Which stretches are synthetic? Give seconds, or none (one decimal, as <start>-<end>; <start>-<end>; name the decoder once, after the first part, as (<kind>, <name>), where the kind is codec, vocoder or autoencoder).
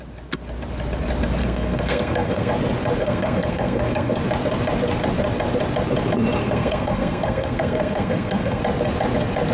1.4-2.5 (codec, SNAC); 3.0-4.2; 6.4-8.6